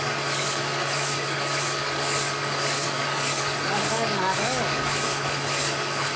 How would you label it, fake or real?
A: fake